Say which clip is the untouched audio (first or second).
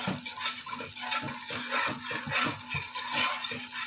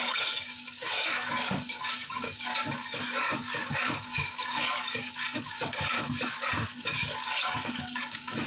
first